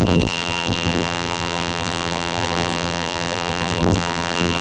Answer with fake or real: fake